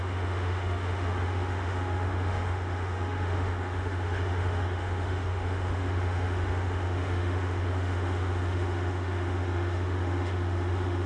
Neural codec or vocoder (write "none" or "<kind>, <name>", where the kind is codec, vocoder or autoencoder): autoencoder, DAC-VAE